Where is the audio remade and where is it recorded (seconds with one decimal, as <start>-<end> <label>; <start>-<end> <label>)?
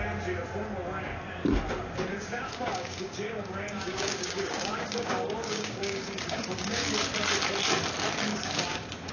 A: 0.0-2.1 recorded; 2.1-6.9 remade; 6.9-8.3 recorded; 8.3-9.1 remade